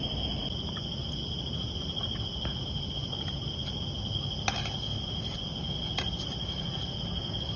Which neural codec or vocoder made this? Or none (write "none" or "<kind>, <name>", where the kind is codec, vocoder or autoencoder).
none